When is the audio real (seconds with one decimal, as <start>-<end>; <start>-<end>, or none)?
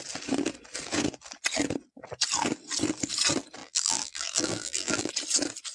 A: 0.0-3.6; 5.1-5.7